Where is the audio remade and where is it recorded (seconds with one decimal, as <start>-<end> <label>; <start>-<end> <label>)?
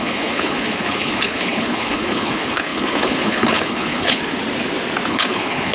0.0-4.4 remade; 4.4-5.1 recorded; 5.1-5.7 remade